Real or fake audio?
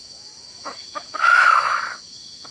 fake